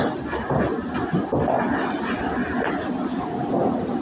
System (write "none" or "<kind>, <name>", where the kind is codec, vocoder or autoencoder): none